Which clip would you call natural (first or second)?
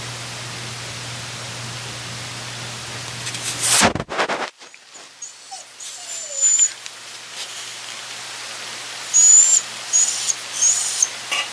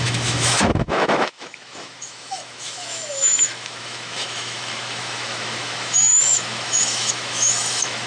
first